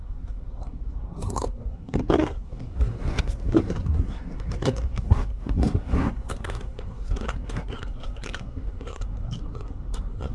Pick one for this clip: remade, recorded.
remade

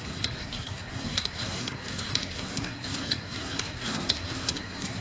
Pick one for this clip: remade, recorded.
remade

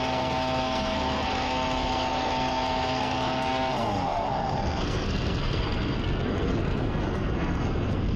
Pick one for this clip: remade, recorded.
remade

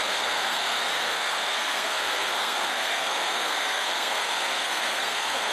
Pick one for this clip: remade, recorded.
remade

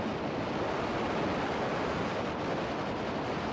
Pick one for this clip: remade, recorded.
recorded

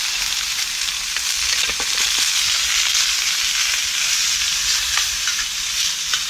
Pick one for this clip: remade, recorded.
recorded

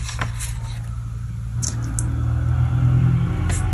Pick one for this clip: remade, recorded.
recorded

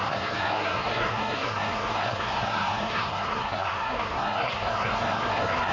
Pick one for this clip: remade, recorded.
remade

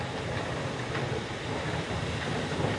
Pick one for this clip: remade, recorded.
recorded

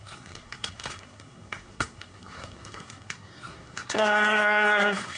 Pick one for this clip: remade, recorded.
remade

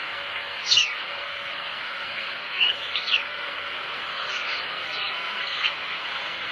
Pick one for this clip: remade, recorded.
remade